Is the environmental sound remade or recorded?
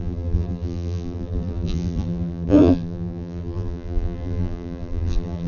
remade